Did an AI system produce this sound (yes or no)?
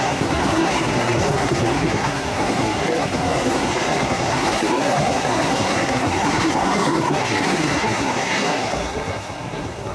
yes